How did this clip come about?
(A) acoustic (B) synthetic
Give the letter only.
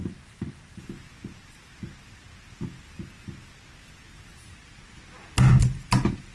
A